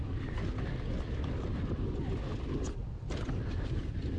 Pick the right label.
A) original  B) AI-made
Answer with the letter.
A